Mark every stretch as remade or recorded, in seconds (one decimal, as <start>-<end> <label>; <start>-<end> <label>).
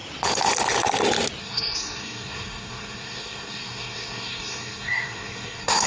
0.0-1.4 recorded; 1.4-5.9 remade